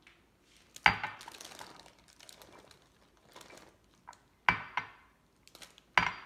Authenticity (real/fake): real